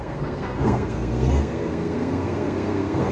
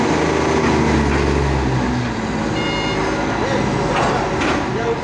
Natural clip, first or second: second